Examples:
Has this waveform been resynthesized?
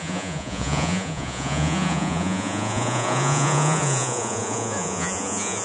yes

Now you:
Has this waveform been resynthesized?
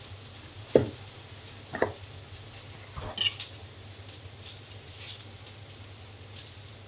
no